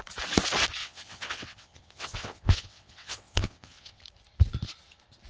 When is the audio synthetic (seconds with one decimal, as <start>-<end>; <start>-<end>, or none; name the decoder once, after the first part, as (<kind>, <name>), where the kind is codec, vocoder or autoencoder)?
0.8-4.0 (vocoder, WaveNeXt)